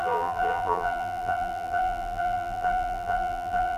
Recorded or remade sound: remade